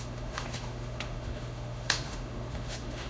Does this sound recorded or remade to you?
remade